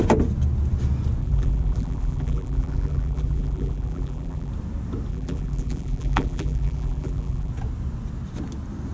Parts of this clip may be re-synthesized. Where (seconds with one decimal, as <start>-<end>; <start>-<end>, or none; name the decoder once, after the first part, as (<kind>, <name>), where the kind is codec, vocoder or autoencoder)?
1.2-4.5 (vocoder, BigVGAN v2); 5.1-7.5